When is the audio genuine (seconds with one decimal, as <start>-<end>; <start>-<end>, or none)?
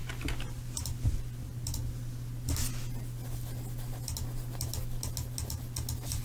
0.0-6.2